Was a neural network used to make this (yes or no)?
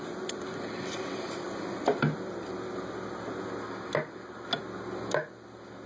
no